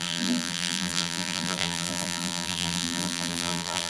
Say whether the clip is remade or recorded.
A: remade